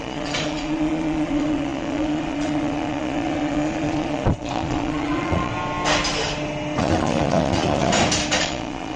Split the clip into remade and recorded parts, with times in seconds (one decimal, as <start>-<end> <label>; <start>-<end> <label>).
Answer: 0.0-5.5 remade; 5.5-6.8 recorded; 6.8-7.9 remade; 7.9-8.4 recorded; 8.4-9.0 remade